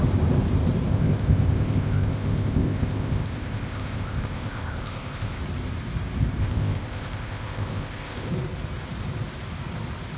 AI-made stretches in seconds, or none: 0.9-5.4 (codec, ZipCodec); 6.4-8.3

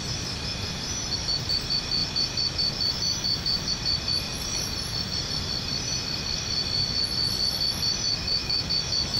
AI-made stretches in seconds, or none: 8.2-8.7 (autoencoder, DAC-VAE)